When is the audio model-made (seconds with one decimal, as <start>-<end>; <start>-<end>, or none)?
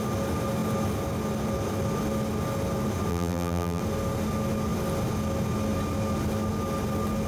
3.1-3.8